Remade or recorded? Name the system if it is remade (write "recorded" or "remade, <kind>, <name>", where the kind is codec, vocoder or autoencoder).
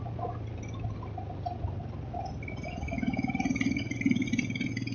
recorded